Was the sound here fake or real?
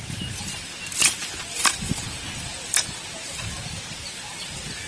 real